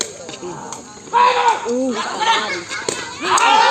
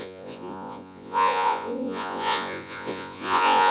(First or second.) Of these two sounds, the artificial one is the second